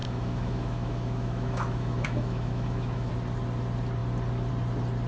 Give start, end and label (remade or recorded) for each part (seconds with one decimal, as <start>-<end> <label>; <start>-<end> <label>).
0.0-3.1 remade; 3.1-5.1 recorded